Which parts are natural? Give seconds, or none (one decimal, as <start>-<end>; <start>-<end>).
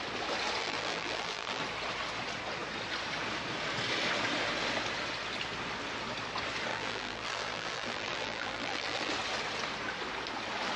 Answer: 0.0-0.6; 1.6-6.7; 9.1-10.8